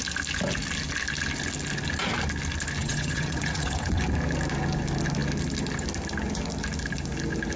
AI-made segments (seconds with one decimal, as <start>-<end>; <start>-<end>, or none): 2.8-4.0